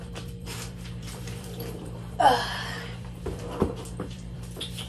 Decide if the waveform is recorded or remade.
remade